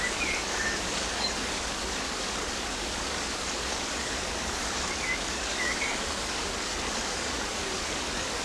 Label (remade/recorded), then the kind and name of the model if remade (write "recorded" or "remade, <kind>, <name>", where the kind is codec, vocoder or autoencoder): remade, codec, DAC